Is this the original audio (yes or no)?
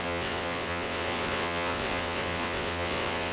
no